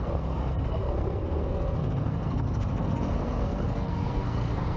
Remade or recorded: remade